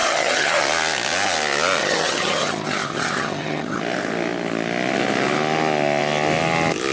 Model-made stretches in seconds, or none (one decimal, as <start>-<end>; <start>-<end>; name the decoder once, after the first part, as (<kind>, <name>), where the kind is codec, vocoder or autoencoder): 0.0-0.6 (vocoder, HiFi-GAN); 1.8-3.8